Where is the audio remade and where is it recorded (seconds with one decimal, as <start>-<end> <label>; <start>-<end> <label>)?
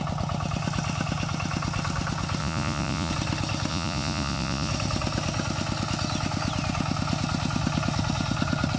0.0-2.4 recorded; 2.4-3.1 remade; 3.1-3.7 recorded; 3.7-4.7 remade; 4.7-8.8 recorded